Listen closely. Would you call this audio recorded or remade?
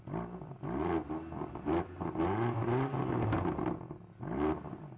recorded